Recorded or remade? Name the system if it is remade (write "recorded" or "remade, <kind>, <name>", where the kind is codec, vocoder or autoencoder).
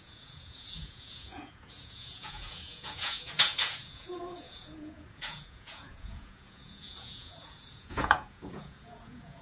remade, vocoder, Vocos